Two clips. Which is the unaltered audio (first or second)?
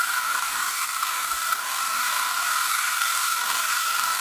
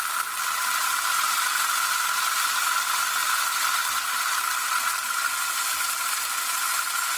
second